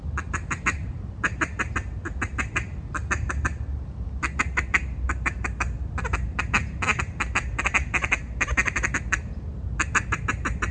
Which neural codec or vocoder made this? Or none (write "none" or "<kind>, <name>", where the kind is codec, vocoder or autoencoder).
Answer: none